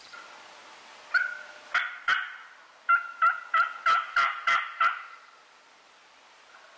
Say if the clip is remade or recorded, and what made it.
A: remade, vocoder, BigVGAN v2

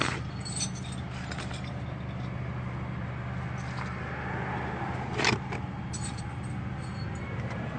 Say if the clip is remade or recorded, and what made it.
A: recorded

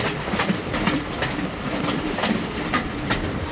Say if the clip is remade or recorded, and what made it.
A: remade, vocoder, BigVGAN v2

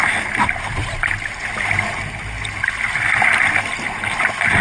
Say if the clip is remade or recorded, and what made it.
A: recorded